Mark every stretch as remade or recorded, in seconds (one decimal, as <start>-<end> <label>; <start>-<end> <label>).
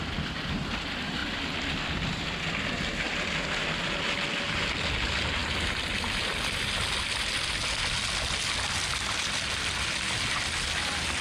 0.0-11.2 recorded